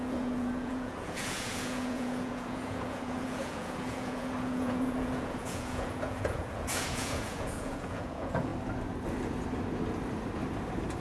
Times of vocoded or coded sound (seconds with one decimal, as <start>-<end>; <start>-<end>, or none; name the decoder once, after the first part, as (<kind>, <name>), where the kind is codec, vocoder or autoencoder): 0.0-8.5 (vocoder, Vocos)